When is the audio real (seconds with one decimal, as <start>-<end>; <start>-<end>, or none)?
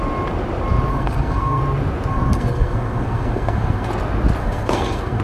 0.0-0.9; 1.6-2.1; 3.9-4.4